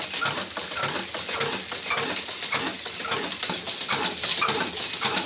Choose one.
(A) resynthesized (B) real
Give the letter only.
B